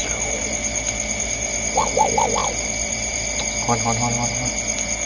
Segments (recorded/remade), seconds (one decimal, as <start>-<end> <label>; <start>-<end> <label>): 0.0-0.5 remade; 0.5-2.4 recorded; 2.4-3.4 remade; 3.4-5.1 recorded